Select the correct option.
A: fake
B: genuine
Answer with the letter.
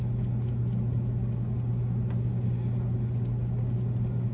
B